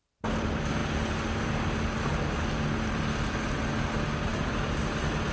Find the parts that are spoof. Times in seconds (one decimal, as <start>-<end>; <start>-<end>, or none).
none